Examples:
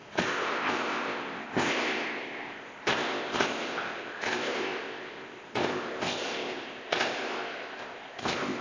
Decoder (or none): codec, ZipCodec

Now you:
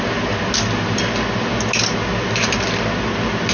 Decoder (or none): none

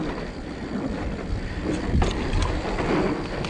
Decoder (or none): none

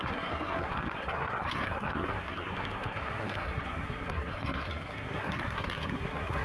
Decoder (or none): codec, SNAC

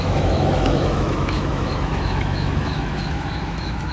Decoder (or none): autoencoder, DAC-VAE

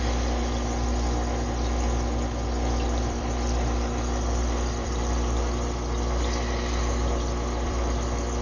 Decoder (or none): vocoder, BigVGAN v2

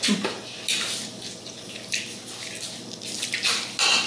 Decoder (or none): none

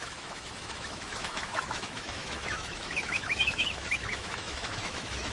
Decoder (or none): autoencoder, DAC-VAE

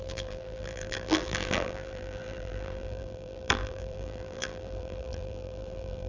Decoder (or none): vocoder, BigVGAN v2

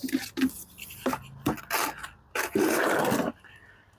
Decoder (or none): none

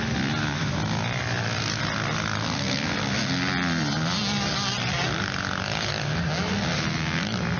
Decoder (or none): none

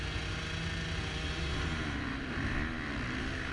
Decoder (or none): none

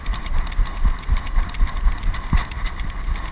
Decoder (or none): none